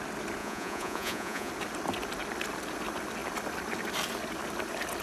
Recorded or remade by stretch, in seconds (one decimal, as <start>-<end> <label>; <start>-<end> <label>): 0.0-0.4 recorded; 0.4-1.5 remade; 1.5-5.0 recorded